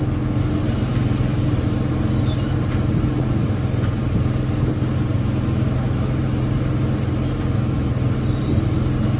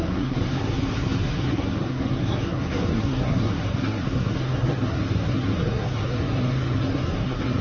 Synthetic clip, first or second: second